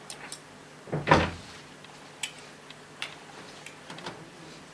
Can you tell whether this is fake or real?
real